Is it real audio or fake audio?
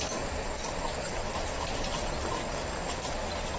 fake